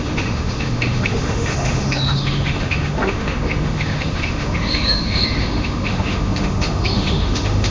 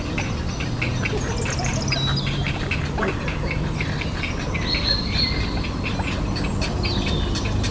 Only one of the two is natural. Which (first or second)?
second